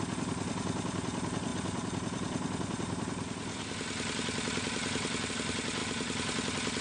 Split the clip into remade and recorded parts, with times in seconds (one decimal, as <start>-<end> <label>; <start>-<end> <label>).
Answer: 0.0-6.8 recorded